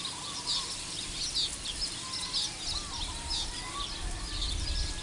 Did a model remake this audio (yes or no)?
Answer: no